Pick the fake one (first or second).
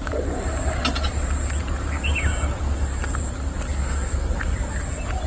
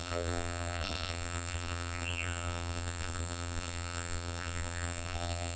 second